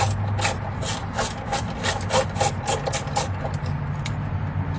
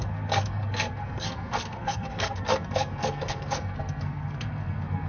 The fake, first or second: second